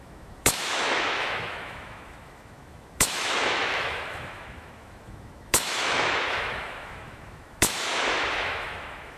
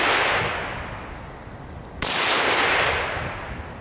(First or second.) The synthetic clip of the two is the first